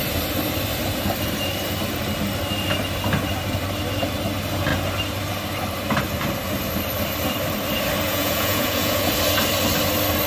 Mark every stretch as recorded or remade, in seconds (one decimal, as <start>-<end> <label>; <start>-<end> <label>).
0.0-8.1 recorded; 8.1-9.1 remade; 9.1-10.3 recorded